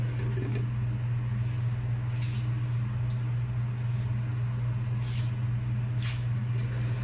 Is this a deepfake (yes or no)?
no